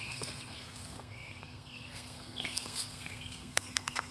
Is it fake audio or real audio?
fake